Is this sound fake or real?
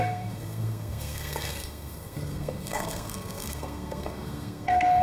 fake